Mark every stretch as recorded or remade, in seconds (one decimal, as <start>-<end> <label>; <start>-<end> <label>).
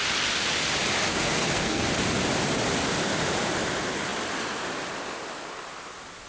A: 0.0-1.1 recorded; 1.1-1.9 remade; 1.9-6.3 recorded